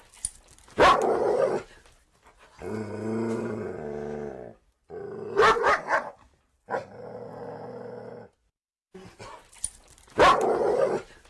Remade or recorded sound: recorded